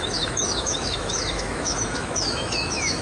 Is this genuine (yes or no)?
no